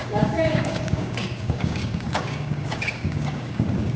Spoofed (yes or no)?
yes